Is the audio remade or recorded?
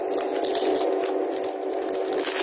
recorded